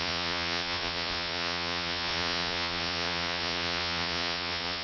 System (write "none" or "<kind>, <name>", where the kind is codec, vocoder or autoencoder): vocoder, Vocos